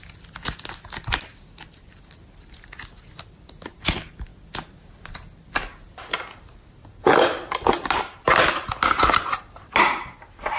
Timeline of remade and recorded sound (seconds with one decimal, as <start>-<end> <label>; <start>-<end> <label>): 0.0-10.6 recorded